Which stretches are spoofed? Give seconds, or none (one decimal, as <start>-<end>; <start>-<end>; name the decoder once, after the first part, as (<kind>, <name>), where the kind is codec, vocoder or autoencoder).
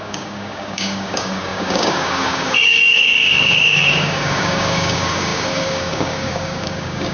0.0-7.1 (codec, DAC)